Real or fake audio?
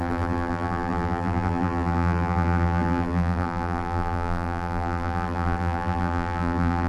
fake